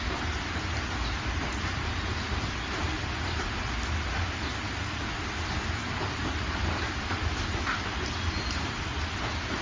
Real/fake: real